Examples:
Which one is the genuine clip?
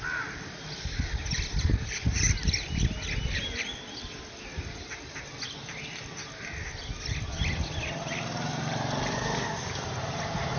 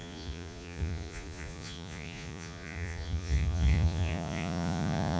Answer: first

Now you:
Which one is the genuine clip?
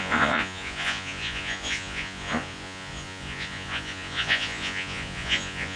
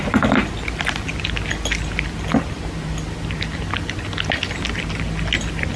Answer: second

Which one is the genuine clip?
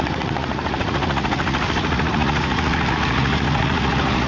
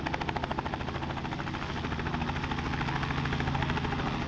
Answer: second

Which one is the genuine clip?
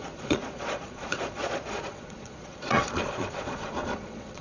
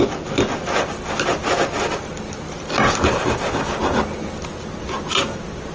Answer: second